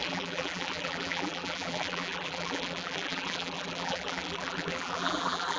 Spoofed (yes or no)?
yes